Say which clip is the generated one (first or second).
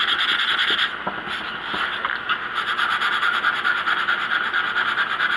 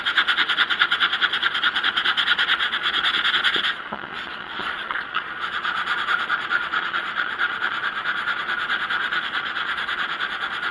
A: second